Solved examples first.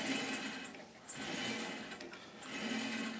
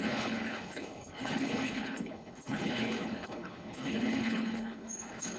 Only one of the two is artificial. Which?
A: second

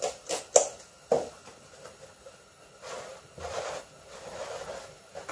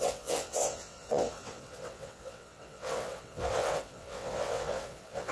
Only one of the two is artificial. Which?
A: second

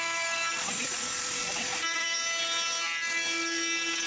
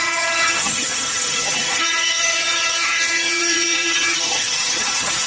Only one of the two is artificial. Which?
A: second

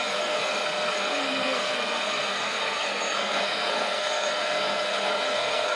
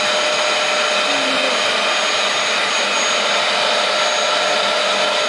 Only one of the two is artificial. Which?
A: first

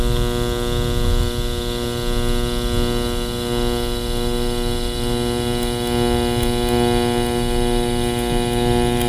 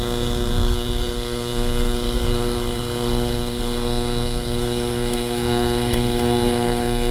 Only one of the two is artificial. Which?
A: second